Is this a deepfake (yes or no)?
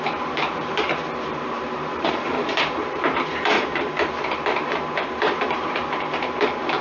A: yes